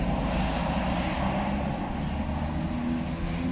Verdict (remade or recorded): recorded